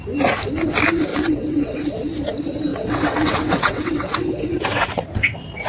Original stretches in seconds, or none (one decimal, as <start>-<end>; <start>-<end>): 0.0-1.1; 1.9-2.7; 4.8-5.7